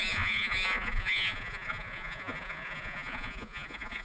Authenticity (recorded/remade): remade